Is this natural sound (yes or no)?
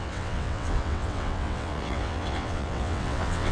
no